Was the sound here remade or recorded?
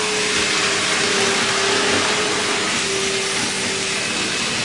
recorded